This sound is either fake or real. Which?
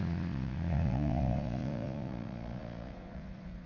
fake